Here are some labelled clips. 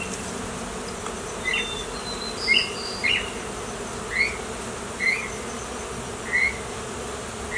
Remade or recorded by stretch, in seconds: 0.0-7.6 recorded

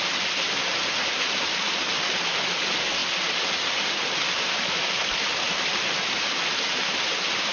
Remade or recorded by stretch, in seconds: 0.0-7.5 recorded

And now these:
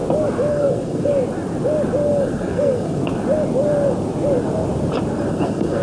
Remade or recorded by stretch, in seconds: 0.0-0.5 recorded; 0.5-1.1 remade; 1.1-2.1 recorded; 2.1-3.0 remade; 3.0-5.3 recorded; 5.3-5.8 remade

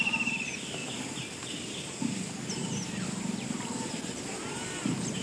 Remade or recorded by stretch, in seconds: 0.0-5.2 recorded

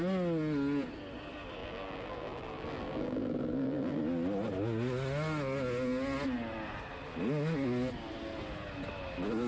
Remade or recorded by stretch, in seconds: 0.0-1.6 recorded; 1.6-4.0 remade; 4.0-9.5 recorded

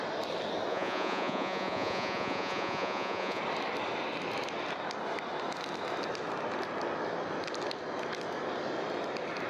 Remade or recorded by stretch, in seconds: 0.0-0.7 recorded; 0.7-3.4 remade; 3.4-9.5 recorded

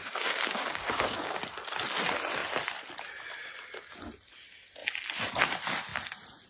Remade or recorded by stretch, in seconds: 0.0-1.4 remade; 1.4-6.5 recorded

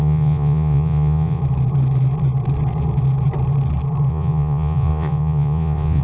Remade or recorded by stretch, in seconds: 0.0-1.4 remade; 1.4-4.1 recorded; 4.1-6.0 remade